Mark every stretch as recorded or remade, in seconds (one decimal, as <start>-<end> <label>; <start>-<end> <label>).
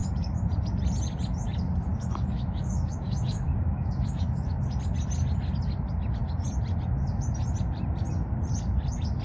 0.0-0.5 remade; 0.5-1.9 recorded; 1.9-4.5 remade; 4.5-9.2 recorded